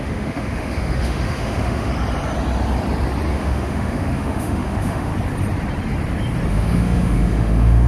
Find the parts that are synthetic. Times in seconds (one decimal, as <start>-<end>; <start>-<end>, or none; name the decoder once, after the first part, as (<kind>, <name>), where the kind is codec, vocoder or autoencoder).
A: 0.0-1.9 (autoencoder, DAC-VAE); 3.3-5.1; 6.5-7.9